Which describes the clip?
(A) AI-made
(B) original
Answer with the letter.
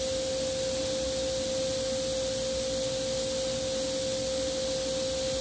B